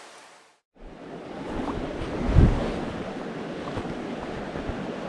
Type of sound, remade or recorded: recorded